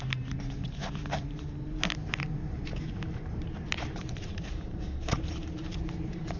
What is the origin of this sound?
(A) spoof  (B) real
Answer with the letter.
A